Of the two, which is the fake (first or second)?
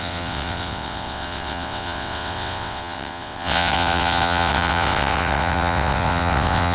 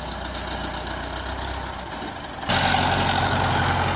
first